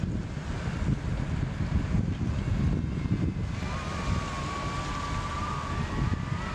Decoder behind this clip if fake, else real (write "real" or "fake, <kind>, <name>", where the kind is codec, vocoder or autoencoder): real